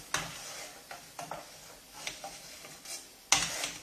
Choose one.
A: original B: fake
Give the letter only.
A